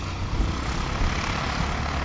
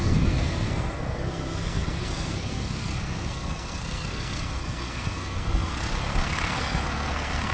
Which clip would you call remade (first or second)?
second